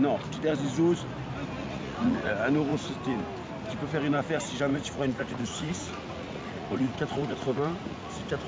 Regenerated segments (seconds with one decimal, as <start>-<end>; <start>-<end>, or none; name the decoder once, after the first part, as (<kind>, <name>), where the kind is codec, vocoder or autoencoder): 1.6-2.3 (vocoder, Vocos); 4.7-8.1